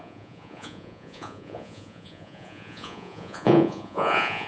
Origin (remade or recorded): remade